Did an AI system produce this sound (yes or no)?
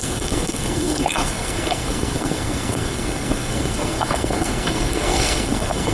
yes